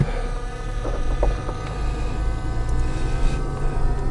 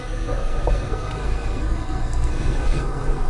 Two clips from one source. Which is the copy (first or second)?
second